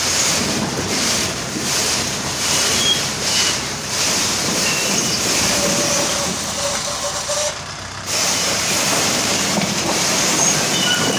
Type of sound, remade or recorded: remade